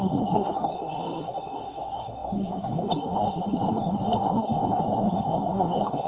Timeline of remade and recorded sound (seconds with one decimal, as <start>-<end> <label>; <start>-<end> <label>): 0.0-6.1 remade